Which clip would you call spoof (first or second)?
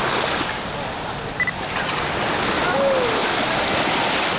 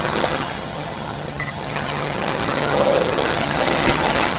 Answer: second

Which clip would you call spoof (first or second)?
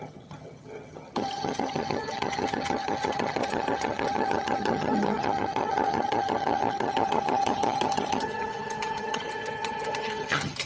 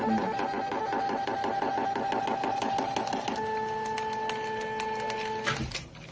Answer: first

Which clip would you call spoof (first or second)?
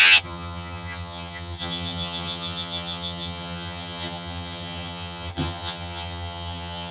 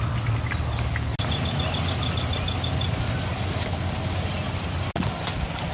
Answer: first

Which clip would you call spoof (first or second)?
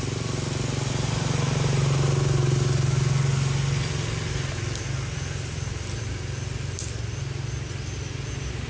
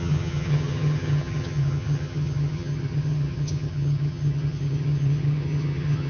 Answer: second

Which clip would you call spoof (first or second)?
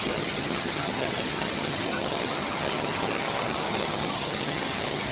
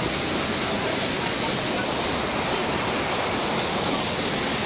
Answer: first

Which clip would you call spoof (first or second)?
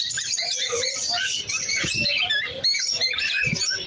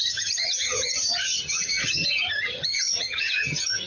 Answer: second